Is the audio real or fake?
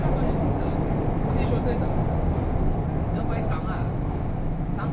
real